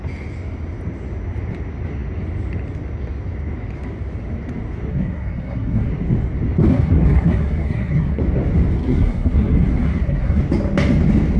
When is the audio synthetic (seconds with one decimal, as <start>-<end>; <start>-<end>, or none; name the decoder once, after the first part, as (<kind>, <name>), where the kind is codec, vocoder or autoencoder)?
4.9-5.9 (codec, SNAC); 6.7-8.2; 8.8-10.4